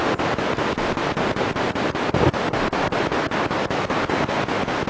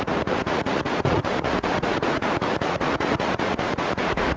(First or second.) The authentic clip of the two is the first